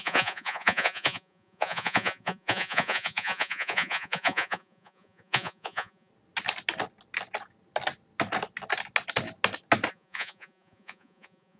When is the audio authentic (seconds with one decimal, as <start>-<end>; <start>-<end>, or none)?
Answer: 6.1-9.9